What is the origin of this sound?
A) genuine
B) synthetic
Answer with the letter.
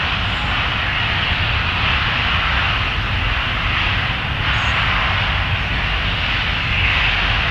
A